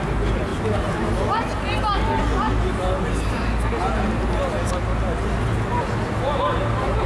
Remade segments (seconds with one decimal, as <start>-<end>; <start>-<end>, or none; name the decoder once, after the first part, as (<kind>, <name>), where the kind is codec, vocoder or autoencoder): none